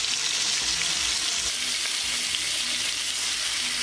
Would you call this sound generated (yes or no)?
no